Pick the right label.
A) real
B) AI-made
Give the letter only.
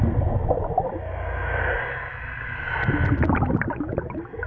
A